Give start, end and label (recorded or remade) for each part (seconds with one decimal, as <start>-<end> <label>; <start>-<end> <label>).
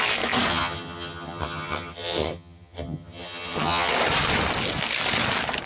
0.0-0.5 recorded; 0.5-3.9 remade; 3.9-5.7 recorded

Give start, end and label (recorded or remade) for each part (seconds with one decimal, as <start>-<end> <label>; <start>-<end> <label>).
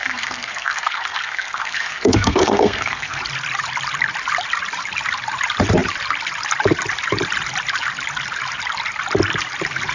0.0-3.2 remade; 3.2-9.9 recorded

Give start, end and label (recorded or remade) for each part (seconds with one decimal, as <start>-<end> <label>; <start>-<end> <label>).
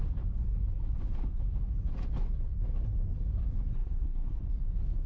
0.0-3.7 recorded; 3.7-4.4 remade; 4.4-5.1 recorded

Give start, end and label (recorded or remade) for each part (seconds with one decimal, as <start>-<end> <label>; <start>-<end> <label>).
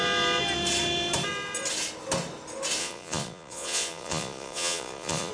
0.0-2.8 recorded; 2.8-5.3 remade